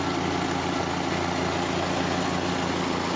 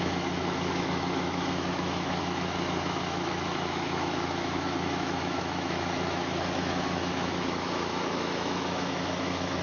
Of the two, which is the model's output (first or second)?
second